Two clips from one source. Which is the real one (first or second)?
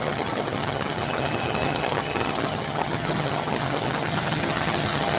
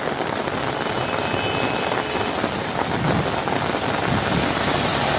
second